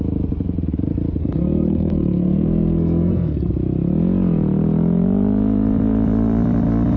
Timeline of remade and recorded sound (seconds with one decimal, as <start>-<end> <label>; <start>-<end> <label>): 0.0-1.2 recorded; 1.2-3.5 remade; 3.5-7.0 recorded